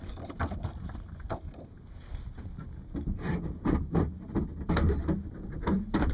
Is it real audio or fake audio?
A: real